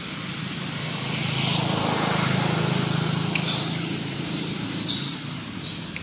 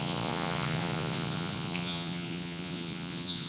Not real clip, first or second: second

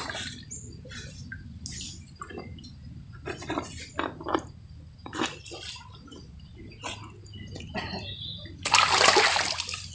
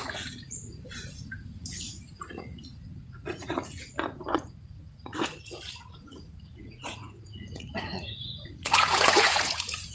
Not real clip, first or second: second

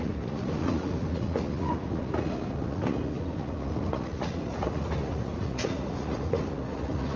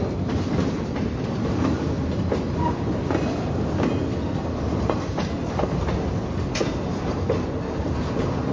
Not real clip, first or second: first